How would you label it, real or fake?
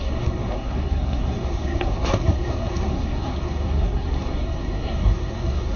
fake